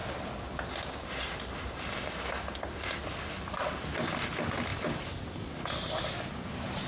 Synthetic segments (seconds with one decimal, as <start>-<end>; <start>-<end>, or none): none

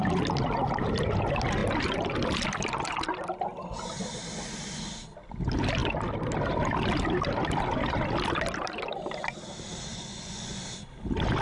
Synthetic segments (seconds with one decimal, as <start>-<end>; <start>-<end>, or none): 9.9-10.6

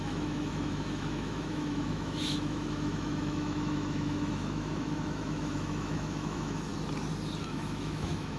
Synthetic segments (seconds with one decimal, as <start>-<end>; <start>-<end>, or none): 0.0-6.7; 7.4-8.4

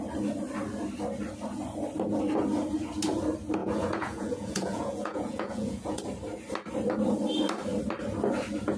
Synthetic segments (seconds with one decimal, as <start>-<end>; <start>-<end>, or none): 3.6-6.0

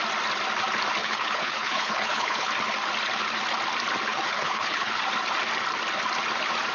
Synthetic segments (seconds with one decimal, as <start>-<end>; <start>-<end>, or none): 1.0-2.5; 4.1-5.0